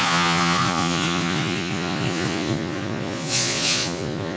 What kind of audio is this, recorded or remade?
remade